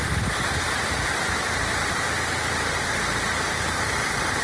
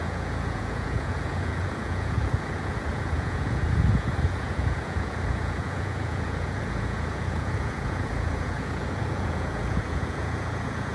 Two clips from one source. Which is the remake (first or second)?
second